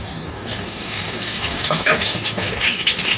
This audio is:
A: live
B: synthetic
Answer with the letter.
B